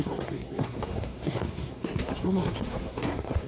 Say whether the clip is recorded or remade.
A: remade